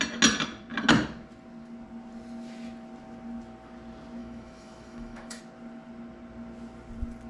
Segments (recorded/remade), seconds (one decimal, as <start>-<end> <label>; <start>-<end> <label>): 0.0-4.2 recorded; 4.2-5.4 remade; 5.4-7.3 recorded